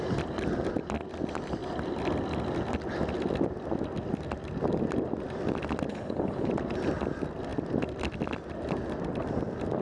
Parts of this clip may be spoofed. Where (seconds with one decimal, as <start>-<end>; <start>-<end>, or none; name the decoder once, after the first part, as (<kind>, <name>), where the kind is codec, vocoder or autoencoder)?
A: 5.9-6.5 (codec, HILCodec)